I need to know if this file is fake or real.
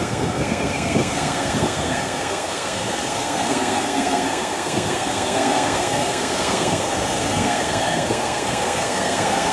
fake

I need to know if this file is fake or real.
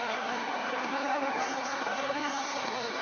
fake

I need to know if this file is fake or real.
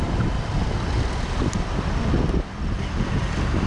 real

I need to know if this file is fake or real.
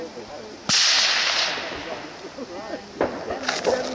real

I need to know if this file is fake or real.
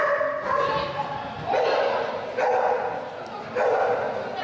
real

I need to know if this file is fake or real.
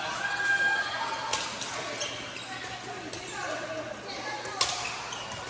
real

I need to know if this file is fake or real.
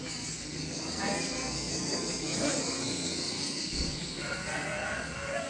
fake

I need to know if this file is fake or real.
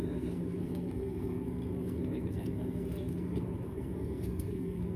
fake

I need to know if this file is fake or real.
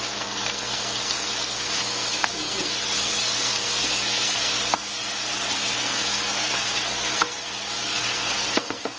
fake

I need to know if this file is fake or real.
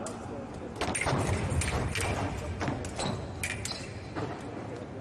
real